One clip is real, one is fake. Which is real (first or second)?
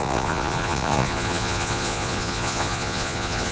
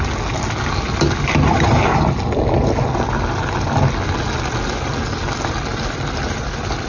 second